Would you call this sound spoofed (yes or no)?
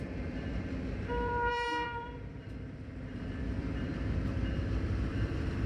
yes